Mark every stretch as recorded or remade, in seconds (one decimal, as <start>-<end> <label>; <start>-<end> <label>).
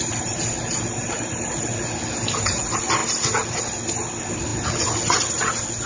0.0-5.9 recorded